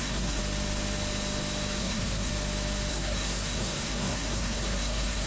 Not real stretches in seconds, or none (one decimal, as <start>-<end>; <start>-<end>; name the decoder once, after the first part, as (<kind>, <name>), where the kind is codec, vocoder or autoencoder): 0.0-0.4 (codec, SNAC); 1.8-2.3; 2.9-5.3